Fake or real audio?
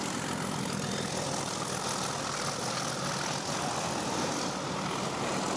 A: real